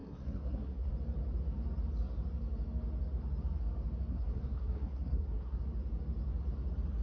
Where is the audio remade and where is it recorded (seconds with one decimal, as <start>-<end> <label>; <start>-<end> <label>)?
0.0-0.9 remade; 0.9-4.1 recorded; 4.1-5.6 remade; 5.6-7.0 recorded